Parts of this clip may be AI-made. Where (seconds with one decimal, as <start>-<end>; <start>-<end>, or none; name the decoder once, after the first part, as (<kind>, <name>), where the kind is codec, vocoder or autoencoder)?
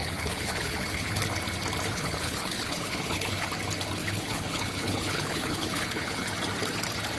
0.0-1.2 (codec, HILCodec); 1.9-3.5; 4.0-6.3